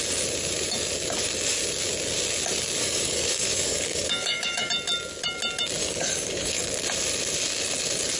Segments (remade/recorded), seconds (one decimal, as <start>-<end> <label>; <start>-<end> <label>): 0.0-2.8 recorded; 2.8-4.7 remade; 4.7-5.8 recorded; 5.8-6.6 remade; 6.6-8.2 recorded